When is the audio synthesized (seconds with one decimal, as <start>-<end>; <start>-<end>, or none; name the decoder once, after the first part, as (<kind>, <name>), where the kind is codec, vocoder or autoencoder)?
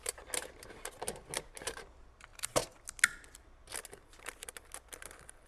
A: none